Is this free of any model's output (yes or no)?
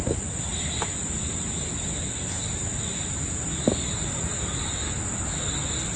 yes